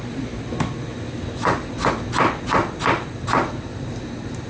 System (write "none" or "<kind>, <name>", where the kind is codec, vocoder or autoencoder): none